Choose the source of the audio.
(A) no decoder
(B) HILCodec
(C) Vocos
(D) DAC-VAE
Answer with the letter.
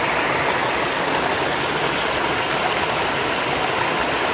A